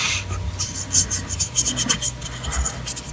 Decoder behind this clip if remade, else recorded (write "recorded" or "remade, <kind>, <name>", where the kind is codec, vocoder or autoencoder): recorded